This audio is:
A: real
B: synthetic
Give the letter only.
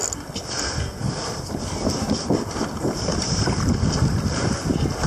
A